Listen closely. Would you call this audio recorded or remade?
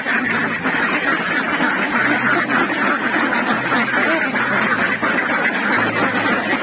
recorded